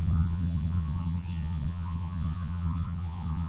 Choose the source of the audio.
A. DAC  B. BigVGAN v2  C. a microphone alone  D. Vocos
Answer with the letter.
D